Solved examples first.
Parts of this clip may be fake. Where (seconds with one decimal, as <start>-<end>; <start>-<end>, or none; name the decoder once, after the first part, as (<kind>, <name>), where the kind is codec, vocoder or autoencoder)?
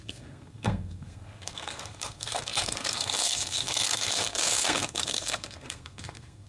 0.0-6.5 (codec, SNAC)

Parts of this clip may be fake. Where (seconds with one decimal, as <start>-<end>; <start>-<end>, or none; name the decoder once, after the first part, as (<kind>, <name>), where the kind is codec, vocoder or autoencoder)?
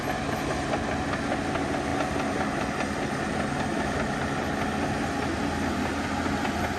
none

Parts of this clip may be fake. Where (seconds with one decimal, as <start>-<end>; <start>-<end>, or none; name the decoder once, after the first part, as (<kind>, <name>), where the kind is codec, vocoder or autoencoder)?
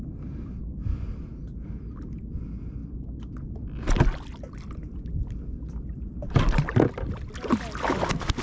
none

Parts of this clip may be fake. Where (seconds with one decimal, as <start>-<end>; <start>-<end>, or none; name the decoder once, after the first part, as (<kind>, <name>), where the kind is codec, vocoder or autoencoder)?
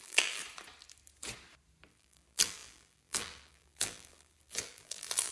0.0-0.4 (vocoder, BigVGAN v2); 1.9-5.3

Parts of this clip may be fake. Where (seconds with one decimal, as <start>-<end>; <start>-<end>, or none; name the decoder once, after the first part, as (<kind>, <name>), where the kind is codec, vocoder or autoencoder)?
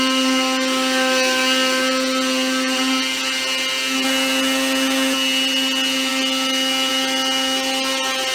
none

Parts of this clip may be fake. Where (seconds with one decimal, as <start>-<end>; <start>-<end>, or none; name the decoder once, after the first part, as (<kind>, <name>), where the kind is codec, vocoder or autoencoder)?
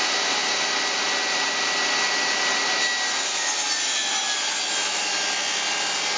none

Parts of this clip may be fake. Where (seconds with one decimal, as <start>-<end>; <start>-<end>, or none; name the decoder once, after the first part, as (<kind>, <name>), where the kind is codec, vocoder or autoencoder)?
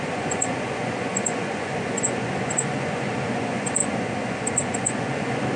0.0-5.6 (vocoder, Vocos)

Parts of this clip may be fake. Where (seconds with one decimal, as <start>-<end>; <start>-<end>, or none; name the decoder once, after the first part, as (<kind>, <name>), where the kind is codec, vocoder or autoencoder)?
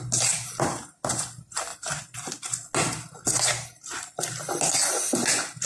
none